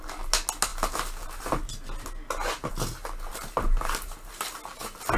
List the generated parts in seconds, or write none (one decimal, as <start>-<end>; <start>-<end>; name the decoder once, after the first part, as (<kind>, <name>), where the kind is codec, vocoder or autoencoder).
3.3-4.5 (vocoder, BigVGAN v2)